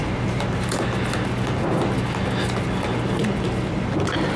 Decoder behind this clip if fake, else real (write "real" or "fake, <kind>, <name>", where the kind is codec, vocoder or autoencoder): real